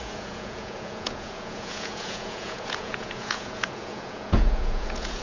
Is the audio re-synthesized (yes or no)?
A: yes